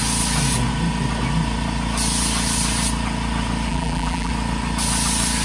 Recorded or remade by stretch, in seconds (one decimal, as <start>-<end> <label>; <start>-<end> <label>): 0.0-3.7 recorded; 3.7-4.3 remade; 4.3-5.4 recorded